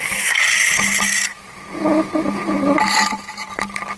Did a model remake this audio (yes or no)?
no